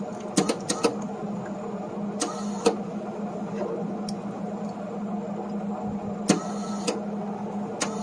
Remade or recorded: recorded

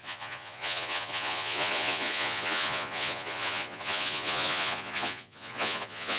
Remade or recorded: remade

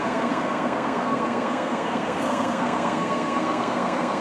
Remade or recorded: remade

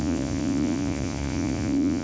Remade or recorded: remade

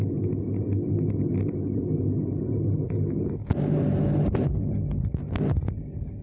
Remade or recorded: recorded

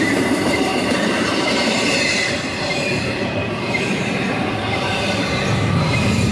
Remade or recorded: remade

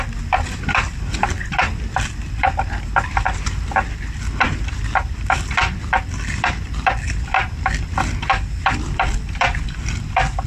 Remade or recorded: remade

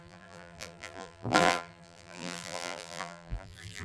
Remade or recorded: remade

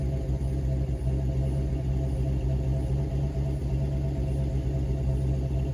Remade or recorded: recorded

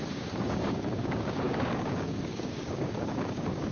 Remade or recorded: remade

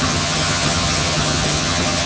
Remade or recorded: remade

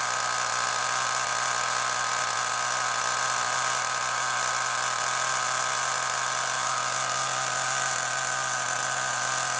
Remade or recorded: recorded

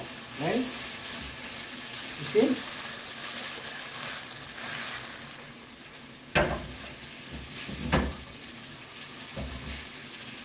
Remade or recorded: recorded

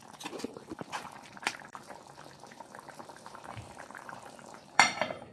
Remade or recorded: remade